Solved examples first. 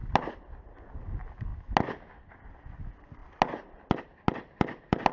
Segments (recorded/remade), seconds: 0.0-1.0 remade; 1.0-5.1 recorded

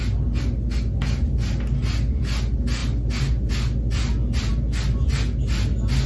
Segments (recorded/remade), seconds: 0.0-6.1 recorded

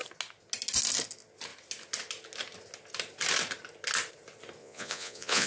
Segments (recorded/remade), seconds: 0.0-4.6 recorded; 4.6-5.5 remade

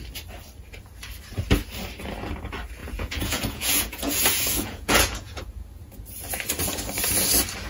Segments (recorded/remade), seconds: 0.0-2.8 recorded; 2.8-5.4 remade; 5.4-7.7 recorded

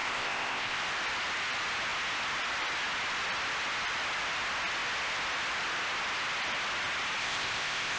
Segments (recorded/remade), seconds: 0.0-0.8 remade; 0.8-7.2 recorded; 7.2-8.0 remade

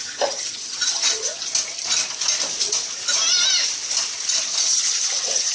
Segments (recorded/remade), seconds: 0.0-1.3 remade; 1.3-4.6 recorded; 4.6-5.5 remade

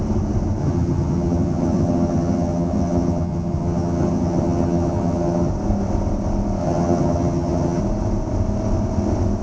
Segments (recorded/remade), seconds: 0.0-0.6 recorded; 0.6-5.5 remade; 5.5-6.6 recorded; 6.6-7.8 remade; 7.8-9.4 recorded